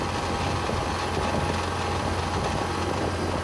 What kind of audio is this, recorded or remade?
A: recorded